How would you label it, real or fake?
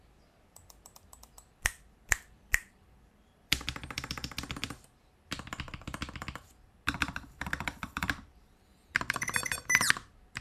fake